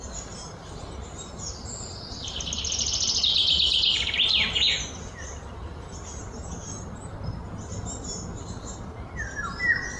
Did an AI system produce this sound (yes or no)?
no